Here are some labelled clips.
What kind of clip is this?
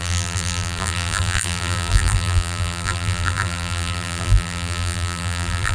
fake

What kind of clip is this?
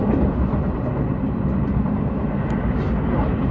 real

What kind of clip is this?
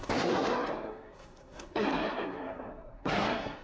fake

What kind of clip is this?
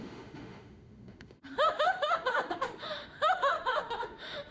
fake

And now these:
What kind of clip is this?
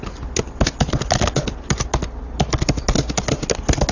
real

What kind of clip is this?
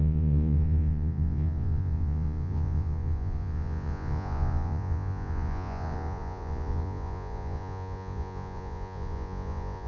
fake